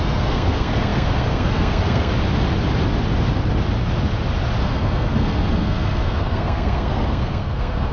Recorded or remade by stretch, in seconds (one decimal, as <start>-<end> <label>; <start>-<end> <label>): 0.0-2.1 remade; 2.1-4.6 recorded; 4.6-7.9 remade